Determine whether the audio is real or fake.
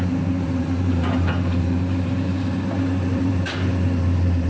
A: fake